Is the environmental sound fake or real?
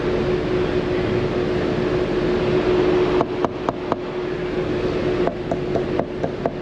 real